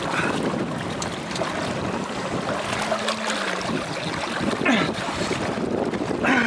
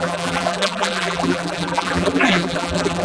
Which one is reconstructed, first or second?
second